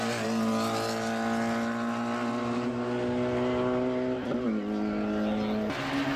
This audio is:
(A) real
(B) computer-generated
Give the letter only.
A